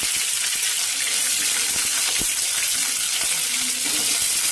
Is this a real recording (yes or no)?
yes